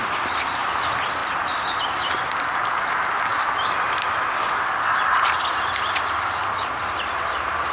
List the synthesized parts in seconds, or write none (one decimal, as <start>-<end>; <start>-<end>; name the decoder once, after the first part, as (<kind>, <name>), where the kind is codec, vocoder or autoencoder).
none